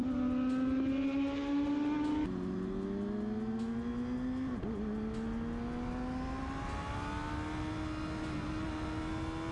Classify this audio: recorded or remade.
recorded